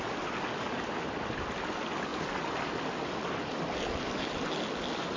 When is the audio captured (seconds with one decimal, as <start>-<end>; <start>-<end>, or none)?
0.0-5.2